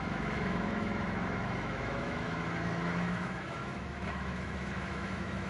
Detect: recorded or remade remade